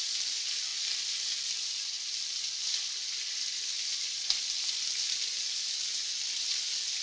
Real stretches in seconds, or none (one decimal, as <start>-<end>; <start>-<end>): 0.0-7.0